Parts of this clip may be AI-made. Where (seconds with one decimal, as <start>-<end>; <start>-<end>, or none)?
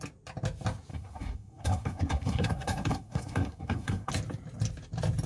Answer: 0.9-4.1